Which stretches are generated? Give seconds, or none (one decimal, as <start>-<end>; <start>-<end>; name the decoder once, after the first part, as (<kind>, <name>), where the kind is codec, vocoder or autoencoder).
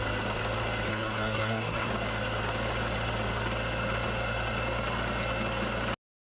0.9-1.9 (codec, SNAC)